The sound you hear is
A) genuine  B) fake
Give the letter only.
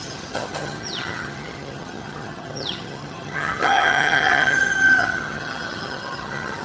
B